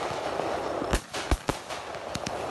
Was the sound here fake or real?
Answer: real